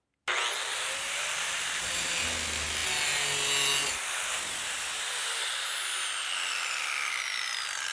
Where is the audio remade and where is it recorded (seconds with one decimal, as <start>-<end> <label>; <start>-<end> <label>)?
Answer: 0.0-0.7 recorded; 0.7-2.2 remade; 2.2-7.9 recorded